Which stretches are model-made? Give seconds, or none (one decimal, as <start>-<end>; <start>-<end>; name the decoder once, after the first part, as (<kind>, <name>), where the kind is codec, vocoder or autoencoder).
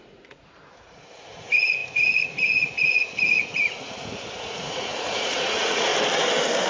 0.0-5.9 (vocoder, Vocos)